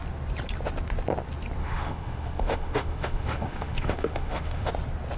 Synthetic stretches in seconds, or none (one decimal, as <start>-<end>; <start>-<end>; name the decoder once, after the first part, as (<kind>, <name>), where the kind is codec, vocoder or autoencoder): 1.6-4.7 (autoencoder, DAC-VAE)